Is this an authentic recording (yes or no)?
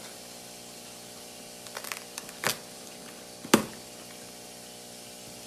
yes